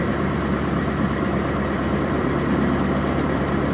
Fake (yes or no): yes